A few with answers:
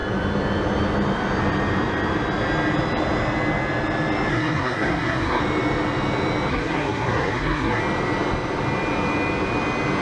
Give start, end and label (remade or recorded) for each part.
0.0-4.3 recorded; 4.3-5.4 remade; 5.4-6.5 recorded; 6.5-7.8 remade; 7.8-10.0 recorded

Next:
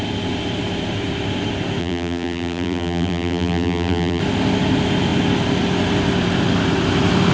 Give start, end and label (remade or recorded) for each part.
0.0-1.8 recorded; 1.8-4.2 remade; 4.2-7.3 recorded